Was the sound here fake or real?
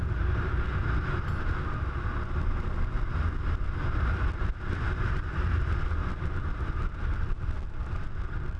real